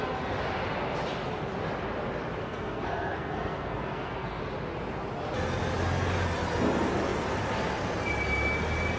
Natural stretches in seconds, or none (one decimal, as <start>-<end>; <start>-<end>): 0.0-2.4; 4.4-9.0